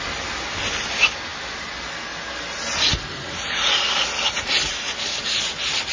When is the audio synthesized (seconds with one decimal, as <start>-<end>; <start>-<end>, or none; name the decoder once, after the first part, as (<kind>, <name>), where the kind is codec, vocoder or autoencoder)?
none